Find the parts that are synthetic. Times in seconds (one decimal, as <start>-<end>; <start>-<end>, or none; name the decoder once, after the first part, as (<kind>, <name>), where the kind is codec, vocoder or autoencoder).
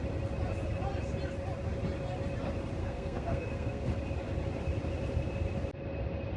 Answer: 2.8-3.8 (codec, SNAC)